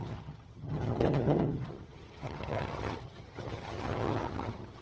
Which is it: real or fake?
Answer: fake